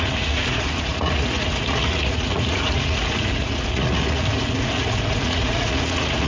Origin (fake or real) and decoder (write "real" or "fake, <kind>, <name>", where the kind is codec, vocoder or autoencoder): fake, vocoder, Vocos